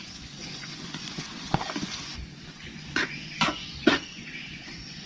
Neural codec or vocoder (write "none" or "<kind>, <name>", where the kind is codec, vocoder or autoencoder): vocoder, Vocos